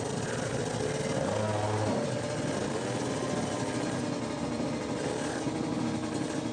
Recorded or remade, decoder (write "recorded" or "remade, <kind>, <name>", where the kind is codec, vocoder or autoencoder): recorded